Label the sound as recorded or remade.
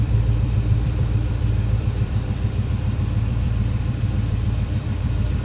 remade